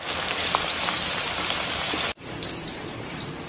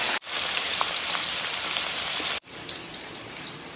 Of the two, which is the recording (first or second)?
first